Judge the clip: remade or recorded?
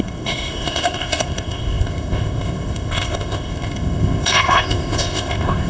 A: remade